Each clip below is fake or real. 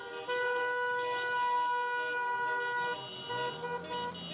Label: real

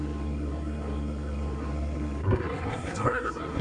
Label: fake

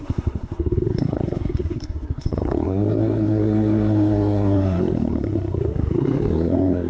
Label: fake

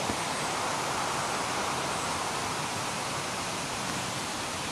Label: real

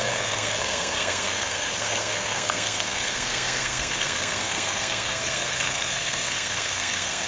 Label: fake